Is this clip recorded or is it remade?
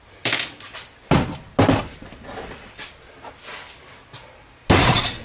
recorded